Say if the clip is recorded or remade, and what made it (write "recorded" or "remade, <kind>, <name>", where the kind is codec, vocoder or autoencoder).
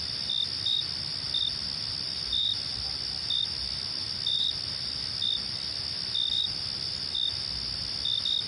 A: recorded